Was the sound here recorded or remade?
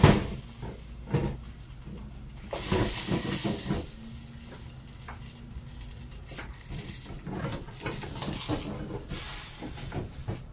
recorded